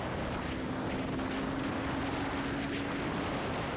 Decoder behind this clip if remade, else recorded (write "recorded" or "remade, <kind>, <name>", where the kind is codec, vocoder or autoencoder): recorded